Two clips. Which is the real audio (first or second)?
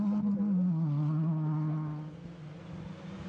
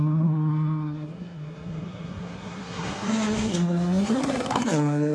first